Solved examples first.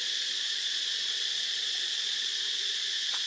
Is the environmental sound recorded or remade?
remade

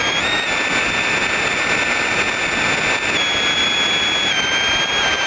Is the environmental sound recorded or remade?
recorded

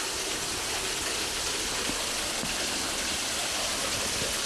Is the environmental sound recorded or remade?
recorded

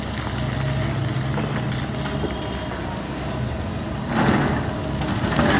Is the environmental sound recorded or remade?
recorded